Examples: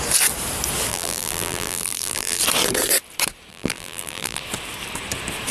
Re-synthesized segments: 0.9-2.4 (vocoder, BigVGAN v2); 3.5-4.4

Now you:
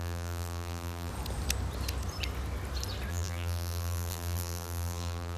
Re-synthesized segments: 0.0-1.1 (vocoder, BigVGAN v2); 3.1-5.4

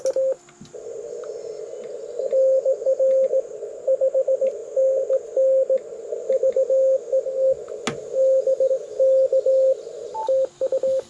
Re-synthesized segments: none

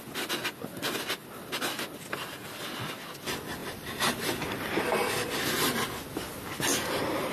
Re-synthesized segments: 1.2-1.8 (vocoder, BigVGAN v2); 3.6-4.1

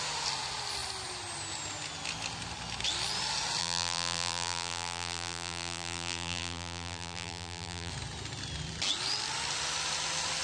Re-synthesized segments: 3.6-7.9 (vocoder, BigVGAN v2)

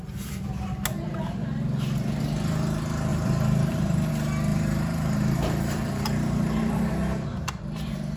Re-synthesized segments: 3.1-4.1 (vocoder, BigVGAN v2); 4.5-6.9

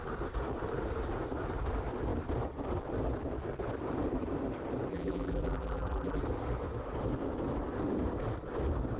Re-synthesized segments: 4.9-6.2 (vocoder, BigVGAN v2)

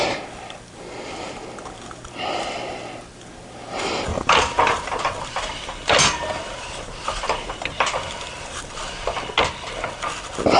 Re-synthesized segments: 4.1-8.7 (vocoder, BigVGAN v2)